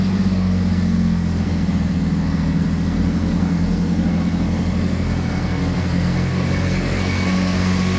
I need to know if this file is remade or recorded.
remade